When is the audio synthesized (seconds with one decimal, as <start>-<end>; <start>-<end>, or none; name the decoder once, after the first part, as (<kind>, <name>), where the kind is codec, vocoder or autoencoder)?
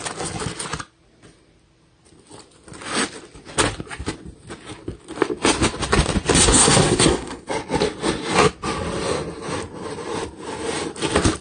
6.4-7.5 (codec, SNAC)